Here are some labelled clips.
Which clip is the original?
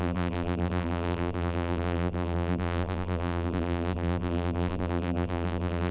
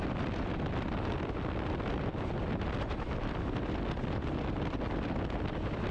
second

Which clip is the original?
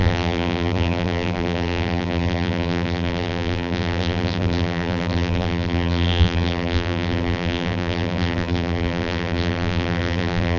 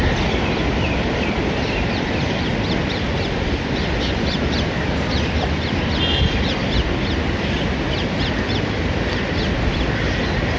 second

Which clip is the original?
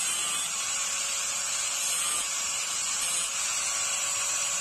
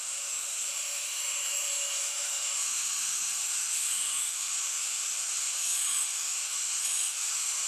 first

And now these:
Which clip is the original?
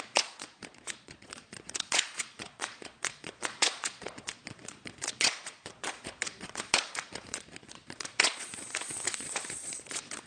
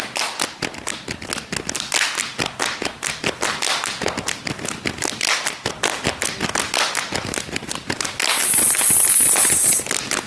second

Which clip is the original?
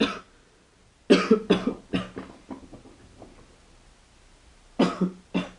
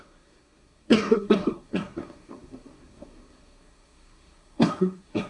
first